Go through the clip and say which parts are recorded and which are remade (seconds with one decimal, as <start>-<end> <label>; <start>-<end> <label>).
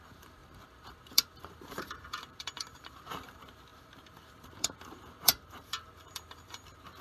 0.0-7.0 remade